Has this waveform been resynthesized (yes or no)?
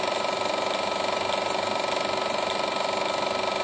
no